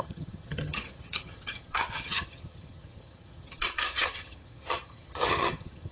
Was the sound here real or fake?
fake